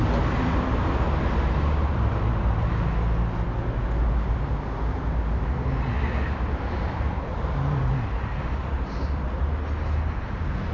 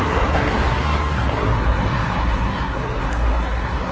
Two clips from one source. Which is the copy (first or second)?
second